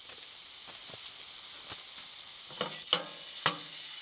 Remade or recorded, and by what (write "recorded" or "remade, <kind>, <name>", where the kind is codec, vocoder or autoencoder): recorded